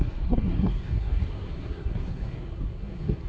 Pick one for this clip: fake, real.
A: fake